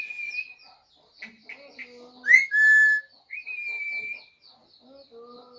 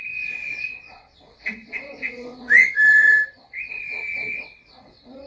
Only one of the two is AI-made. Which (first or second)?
second